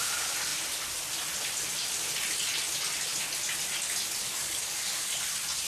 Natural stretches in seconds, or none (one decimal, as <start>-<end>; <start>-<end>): 0.0-4.2; 5.1-5.7

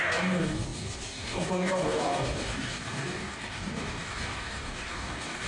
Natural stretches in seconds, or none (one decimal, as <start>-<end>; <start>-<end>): none

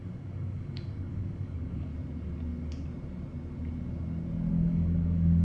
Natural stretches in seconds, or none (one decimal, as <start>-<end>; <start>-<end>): 1.9-4.5